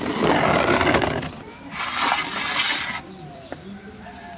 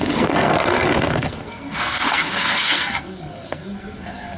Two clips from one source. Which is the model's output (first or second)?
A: second